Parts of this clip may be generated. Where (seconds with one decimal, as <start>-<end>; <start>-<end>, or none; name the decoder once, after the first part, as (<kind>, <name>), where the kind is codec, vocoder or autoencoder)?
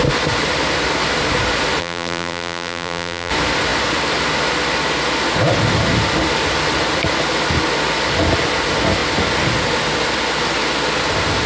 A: 1.8-3.3 (vocoder, BigVGAN v2)